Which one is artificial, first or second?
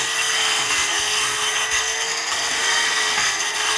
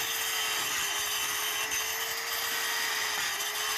first